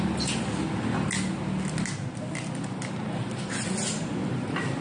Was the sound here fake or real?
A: real